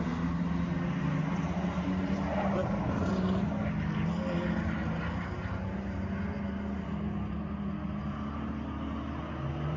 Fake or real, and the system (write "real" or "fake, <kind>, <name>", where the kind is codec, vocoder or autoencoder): real